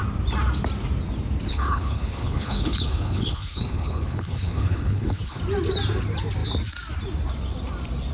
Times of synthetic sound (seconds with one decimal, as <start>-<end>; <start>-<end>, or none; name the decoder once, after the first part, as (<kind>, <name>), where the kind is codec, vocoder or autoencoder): 1.5-5.4 (codec, HILCodec)